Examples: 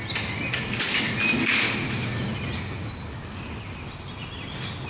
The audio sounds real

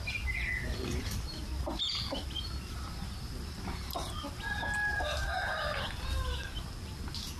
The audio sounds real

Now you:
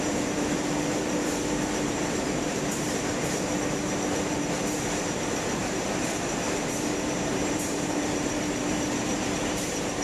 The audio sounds fake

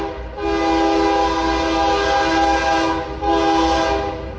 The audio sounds real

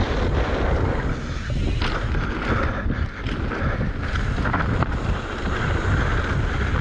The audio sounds real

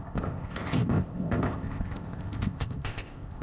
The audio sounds fake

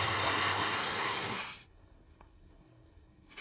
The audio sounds fake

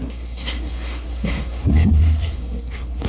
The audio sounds fake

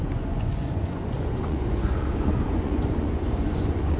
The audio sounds fake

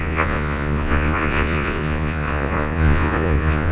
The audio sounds fake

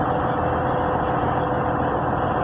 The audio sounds real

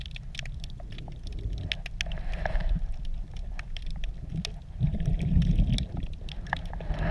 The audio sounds real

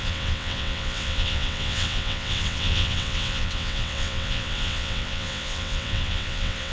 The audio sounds fake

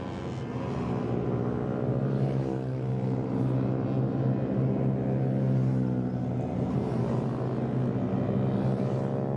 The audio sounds real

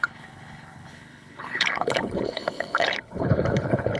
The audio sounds fake